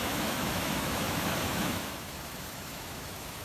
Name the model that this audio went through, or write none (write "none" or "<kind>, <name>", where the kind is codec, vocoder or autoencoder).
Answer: autoencoder, DAC-VAE